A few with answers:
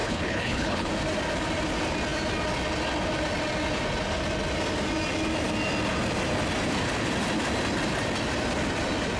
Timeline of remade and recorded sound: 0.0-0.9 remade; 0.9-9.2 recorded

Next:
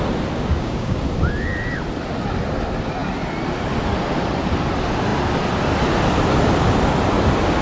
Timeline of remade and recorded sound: 0.0-0.5 recorded; 0.5-1.0 remade; 1.0-7.6 recorded

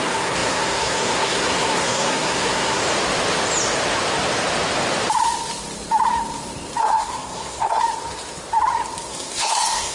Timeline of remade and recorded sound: 0.0-2.8 remade; 2.8-6.8 recorded; 6.8-7.8 remade; 7.8-9.1 recorded; 9.1-9.9 remade

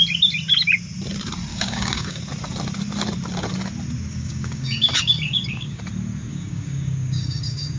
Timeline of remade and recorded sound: 0.0-1.5 recorded; 1.5-2.2 remade; 2.2-4.1 recorded; 4.1-5.8 remade; 5.8-6.3 recorded; 6.3-7.8 remade

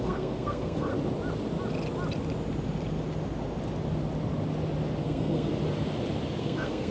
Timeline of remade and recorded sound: 0.0-0.9 remade; 0.9-5.0 recorded; 5.0-5.5 remade; 5.5-6.4 recorded; 6.4-6.9 remade

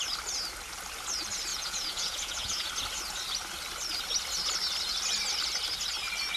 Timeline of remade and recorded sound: 0.0-1.5 recorded; 1.5-2.7 remade; 2.7-6.4 recorded

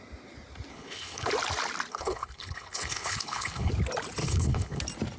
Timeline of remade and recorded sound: 0.0-0.7 recorded; 0.7-1.3 remade; 1.3-1.9 recorded; 1.9-3.7 remade; 3.7-4.2 recorded; 4.2-4.8 remade; 4.8-5.2 recorded

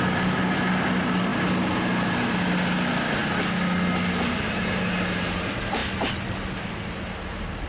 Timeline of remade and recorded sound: 0.0-7.7 recorded